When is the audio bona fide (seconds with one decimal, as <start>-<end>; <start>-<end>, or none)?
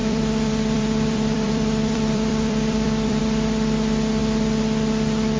3.2-5.4